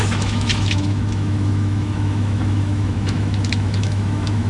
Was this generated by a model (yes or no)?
yes